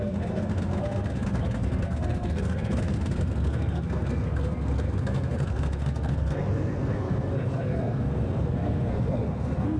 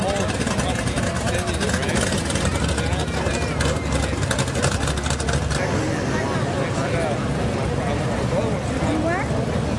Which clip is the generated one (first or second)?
first